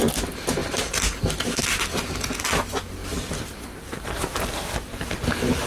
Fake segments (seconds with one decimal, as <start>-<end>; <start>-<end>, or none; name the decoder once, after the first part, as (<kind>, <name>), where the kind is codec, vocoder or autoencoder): 0.6-2.0 (vocoder, BigVGAN v2); 3.0-5.3